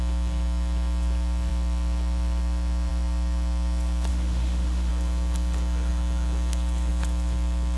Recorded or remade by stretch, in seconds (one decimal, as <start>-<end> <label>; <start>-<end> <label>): 0.0-4.1 recorded; 4.1-4.9 remade; 4.9-7.8 recorded